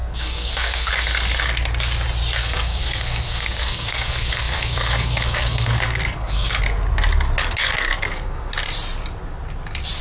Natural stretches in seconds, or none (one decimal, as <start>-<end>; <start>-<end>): 0.9-2.4; 6.6-7.6; 8.5-10.0